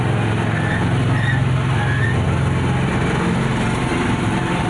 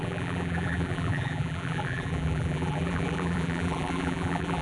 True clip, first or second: first